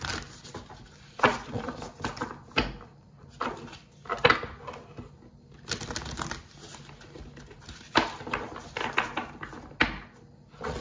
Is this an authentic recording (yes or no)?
yes